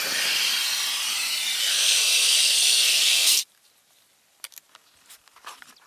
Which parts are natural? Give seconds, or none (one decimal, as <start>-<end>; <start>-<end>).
0.0-1.6; 3.4-5.9